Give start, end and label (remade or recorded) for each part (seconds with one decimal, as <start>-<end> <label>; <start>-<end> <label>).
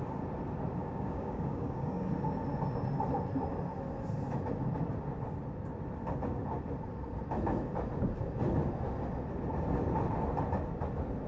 0.0-0.8 recorded; 0.8-2.1 remade; 2.1-11.3 recorded